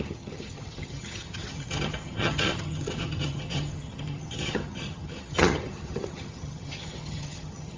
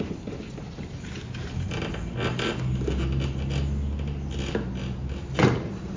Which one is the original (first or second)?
second